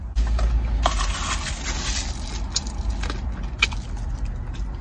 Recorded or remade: recorded